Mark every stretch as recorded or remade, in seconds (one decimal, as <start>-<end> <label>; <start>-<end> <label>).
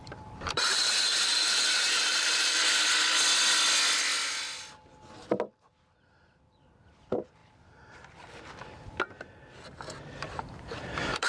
0.0-2.6 remade; 2.6-5.6 recorded; 5.6-7.4 remade; 7.4-10.1 recorded; 10.1-11.3 remade